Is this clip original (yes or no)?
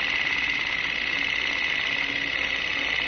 yes